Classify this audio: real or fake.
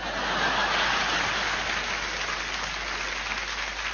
real